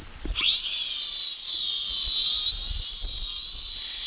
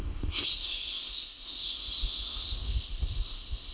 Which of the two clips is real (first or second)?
first